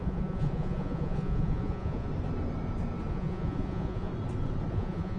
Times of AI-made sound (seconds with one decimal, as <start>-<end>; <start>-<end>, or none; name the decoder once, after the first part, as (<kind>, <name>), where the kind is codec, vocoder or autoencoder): 0.0-2.1 (vocoder, Vocos); 3.1-4.1; 4.7-5.2